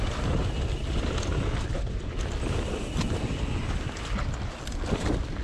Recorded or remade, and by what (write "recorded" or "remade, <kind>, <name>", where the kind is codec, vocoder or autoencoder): recorded